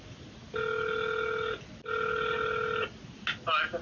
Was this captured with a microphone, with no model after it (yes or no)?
yes